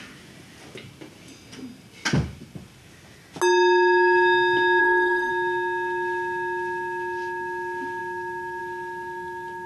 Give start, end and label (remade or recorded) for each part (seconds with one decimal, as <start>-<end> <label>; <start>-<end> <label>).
0.0-4.8 recorded; 4.8-5.3 remade; 5.3-9.7 recorded